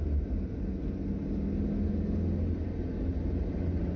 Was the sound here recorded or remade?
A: recorded